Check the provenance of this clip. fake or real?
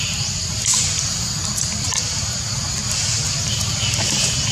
real